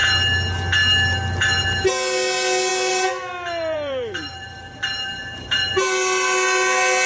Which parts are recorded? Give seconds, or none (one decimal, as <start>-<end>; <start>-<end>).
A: 0.0-2.7; 5.7-7.1